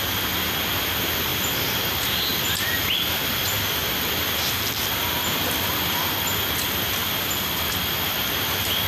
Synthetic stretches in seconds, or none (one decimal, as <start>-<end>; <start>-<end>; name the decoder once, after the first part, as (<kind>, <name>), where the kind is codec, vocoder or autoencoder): 2.3-5.4 (vocoder, BigVGAN v2); 7.0-7.7